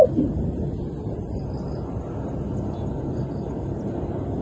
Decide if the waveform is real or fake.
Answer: real